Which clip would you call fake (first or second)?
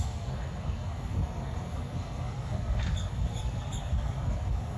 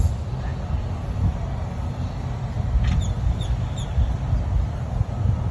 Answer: first